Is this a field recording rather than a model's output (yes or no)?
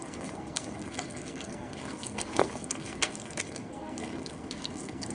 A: no